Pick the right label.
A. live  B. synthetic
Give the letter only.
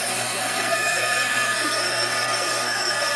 B